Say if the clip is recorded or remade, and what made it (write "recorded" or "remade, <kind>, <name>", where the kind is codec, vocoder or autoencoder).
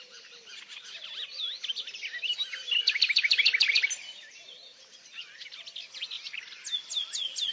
recorded